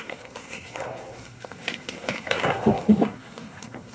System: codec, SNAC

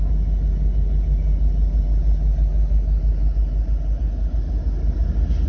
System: none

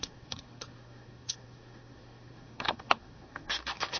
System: codec, SNAC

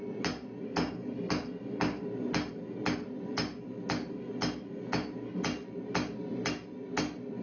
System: none